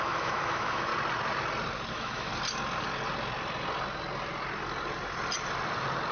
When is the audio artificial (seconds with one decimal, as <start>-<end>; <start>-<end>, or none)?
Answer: 0.0-0.9; 1.9-2.3